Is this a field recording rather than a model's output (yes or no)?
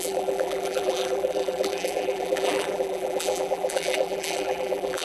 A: no